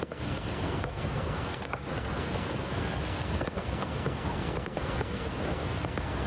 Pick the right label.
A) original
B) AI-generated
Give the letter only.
B